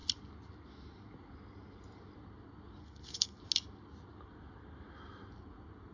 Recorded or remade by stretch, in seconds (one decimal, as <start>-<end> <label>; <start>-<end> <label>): 0.0-2.8 recorded; 2.8-3.4 remade; 3.4-5.9 recorded